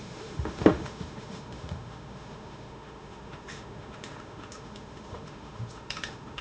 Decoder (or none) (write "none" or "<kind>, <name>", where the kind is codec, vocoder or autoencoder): autoencoder, DAC-VAE